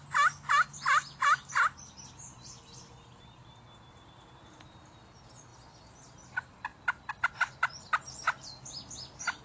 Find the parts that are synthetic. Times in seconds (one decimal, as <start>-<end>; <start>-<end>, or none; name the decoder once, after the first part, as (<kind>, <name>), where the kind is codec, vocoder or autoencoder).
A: none